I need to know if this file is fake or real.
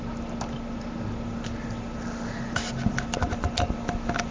real